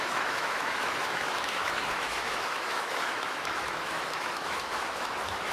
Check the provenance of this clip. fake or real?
fake